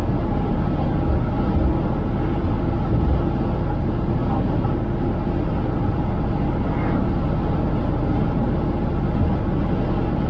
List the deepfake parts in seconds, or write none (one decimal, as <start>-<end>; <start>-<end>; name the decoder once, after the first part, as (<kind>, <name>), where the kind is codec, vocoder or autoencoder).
none